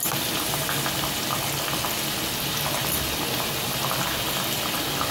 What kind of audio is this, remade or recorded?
recorded